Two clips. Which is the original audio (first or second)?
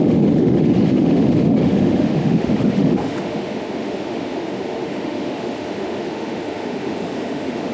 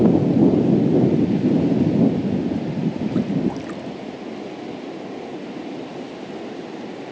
second